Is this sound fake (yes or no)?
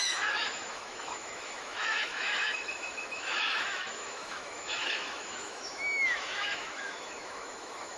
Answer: yes